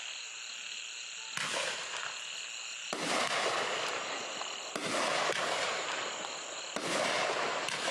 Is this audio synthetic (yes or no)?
no